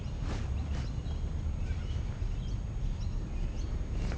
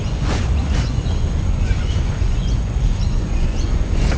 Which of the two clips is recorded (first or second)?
first